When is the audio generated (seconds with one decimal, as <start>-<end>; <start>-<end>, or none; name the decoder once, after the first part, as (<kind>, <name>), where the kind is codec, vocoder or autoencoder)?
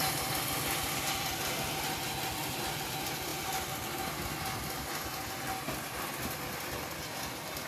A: none